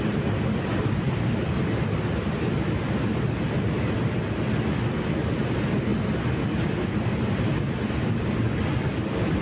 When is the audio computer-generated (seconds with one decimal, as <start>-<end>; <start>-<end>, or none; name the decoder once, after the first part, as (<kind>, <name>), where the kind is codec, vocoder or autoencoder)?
none

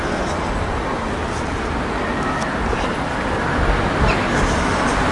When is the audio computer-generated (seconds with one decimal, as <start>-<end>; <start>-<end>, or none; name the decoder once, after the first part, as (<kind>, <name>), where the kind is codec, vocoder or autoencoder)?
none

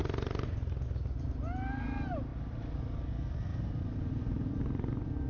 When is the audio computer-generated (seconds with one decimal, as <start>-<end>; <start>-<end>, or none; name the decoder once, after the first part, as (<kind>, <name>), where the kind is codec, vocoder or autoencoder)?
3.5-4.6 (vocoder, BigVGAN v2)